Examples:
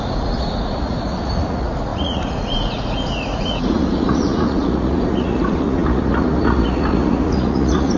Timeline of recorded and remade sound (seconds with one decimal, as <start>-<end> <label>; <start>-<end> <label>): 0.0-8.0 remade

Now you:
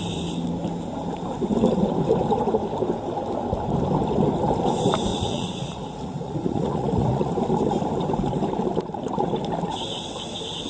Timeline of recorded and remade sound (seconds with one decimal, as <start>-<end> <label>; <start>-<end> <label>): 0.0-5.1 recorded; 5.1-7.3 remade; 7.3-10.7 recorded

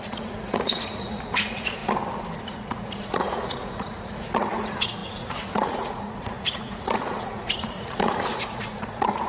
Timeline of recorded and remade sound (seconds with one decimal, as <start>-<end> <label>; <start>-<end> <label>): 0.0-1.8 remade; 1.8-2.4 recorded; 2.4-9.3 remade

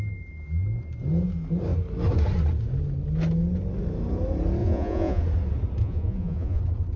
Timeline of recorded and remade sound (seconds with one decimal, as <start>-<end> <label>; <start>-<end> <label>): 0.0-4.6 recorded; 4.6-5.2 remade; 5.2-5.8 recorded; 5.8-6.6 remade; 6.6-7.0 recorded

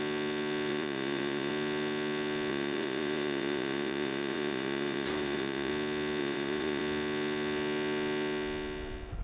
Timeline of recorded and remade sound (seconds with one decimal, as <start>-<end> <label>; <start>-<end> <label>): 0.0-0.7 recorded; 0.7-1.5 remade; 1.5-2.5 recorded; 2.5-5.7 remade; 5.7-6.2 recorded; 6.2-6.8 remade; 6.8-9.2 recorded